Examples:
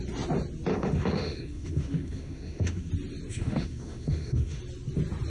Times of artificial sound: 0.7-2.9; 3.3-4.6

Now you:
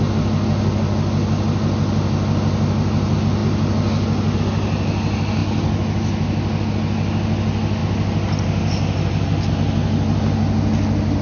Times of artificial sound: none